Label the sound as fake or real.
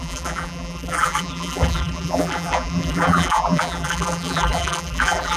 fake